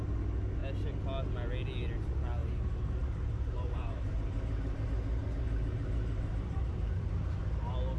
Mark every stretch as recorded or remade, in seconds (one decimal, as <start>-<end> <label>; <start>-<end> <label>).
0.0-2.4 recorded; 2.4-4.8 remade; 4.8-5.2 recorded; 5.2-7.4 remade; 7.4-8.0 recorded